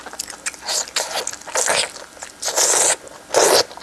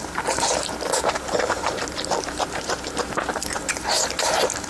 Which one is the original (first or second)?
first